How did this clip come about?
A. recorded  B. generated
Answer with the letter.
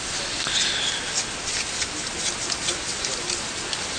A